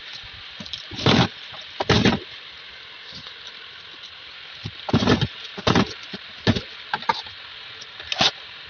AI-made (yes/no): no